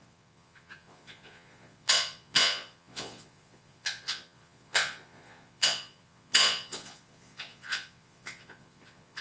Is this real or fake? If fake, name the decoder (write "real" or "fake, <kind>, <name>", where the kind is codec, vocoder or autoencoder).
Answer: fake, vocoder, Vocos